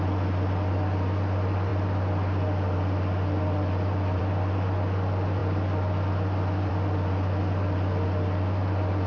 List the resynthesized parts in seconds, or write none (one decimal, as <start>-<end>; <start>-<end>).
none